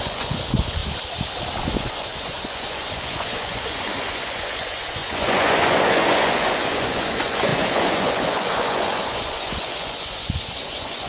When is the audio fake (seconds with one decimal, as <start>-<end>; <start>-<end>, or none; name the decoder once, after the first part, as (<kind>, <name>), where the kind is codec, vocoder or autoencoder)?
0.0-0.8 (vocoder, Vocos); 1.6-11.1